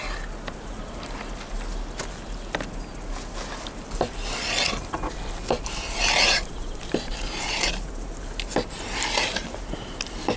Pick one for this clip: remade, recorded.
recorded